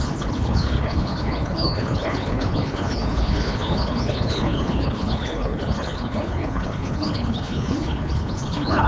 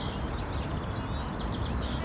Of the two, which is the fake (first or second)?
first